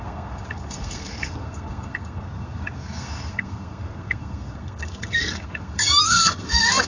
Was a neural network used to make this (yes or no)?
yes